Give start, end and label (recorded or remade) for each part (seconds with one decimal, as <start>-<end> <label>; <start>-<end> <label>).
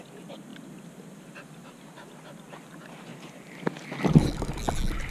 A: 0.0-5.1 recorded